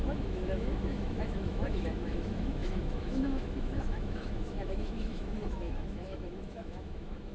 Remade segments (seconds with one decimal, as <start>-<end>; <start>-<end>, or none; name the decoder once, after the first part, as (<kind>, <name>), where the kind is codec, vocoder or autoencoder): 0.0-7.3 (autoencoder, DAC-VAE)